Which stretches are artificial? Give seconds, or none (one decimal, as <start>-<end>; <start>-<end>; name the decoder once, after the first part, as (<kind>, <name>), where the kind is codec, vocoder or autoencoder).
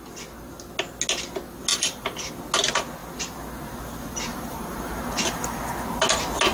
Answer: 1.7-2.3 (vocoder, BigVGAN v2); 4.3-5.6